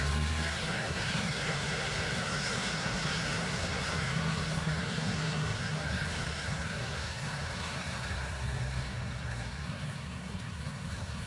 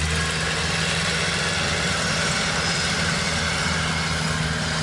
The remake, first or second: first